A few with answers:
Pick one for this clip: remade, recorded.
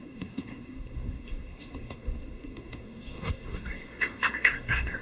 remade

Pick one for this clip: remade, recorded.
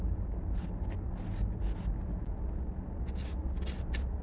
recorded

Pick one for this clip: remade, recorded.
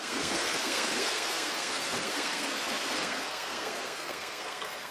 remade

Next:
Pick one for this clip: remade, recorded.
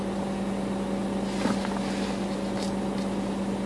recorded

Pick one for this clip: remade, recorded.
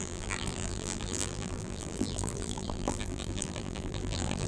remade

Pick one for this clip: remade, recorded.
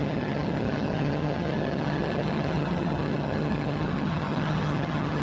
remade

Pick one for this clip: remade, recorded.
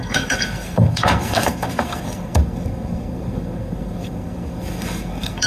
remade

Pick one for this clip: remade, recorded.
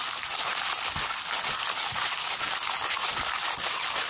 recorded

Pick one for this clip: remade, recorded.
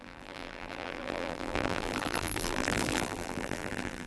remade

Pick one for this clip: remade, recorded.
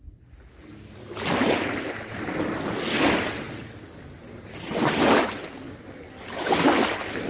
recorded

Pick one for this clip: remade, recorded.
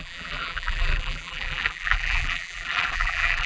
remade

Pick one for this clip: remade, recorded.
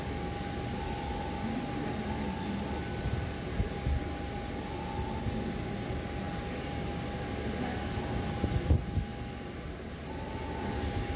recorded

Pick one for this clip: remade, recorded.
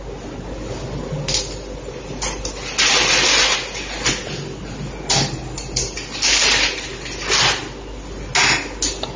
recorded